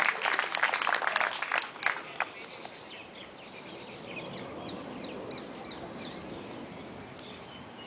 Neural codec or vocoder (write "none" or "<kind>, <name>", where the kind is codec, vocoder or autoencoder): none